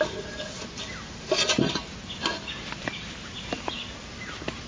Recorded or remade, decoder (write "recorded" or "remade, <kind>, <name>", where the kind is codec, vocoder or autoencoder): recorded